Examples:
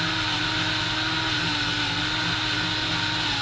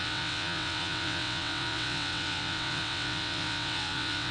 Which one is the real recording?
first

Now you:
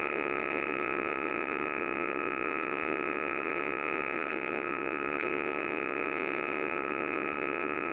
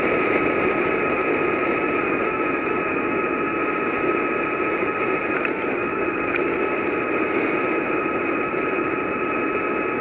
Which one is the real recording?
second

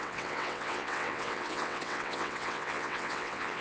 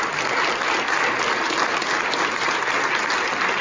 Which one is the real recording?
second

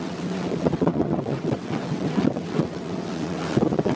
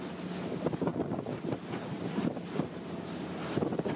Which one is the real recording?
second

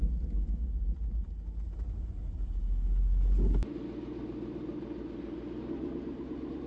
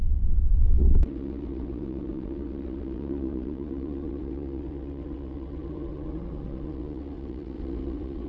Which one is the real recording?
first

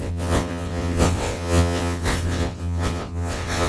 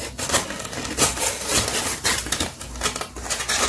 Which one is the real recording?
second